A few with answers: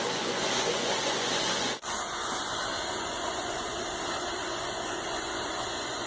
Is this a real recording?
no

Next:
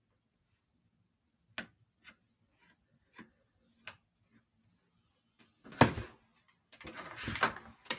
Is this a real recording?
yes